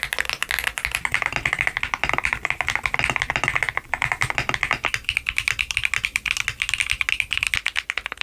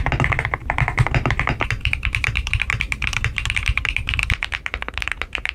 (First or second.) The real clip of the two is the first